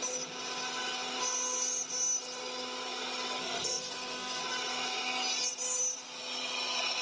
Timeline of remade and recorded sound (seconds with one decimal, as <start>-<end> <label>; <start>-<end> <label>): 0.0-3.4 recorded; 3.4-4.4 remade; 4.4-7.0 recorded